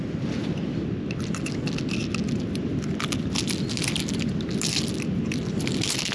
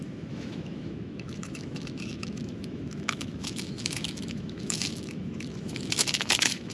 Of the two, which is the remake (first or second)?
second